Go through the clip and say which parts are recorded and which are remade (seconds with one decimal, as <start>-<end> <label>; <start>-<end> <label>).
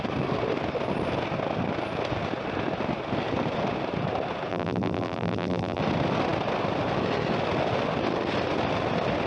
0.0-4.5 recorded; 4.5-5.8 remade; 5.8-9.3 recorded